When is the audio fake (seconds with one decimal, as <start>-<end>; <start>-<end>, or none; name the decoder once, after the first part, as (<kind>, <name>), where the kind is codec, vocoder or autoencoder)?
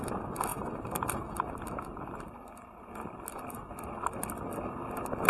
none